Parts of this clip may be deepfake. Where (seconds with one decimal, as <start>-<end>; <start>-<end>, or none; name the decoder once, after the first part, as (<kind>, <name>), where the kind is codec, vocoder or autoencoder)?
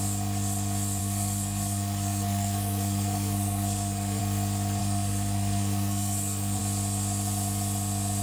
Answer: 1.0-4.2 (codec, SNAC); 4.8-6.6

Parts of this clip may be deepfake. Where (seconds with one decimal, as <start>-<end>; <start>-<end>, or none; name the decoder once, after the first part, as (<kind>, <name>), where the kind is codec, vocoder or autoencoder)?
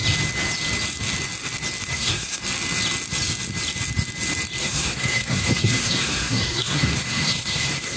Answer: 1.9-2.4 (codec, SNAC); 4.6-8.0